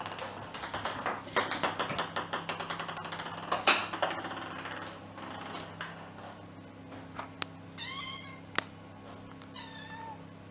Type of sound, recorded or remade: recorded